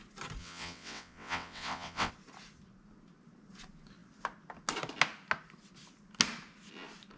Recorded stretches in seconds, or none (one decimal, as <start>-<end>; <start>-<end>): 0.0-0.4; 2.1-7.2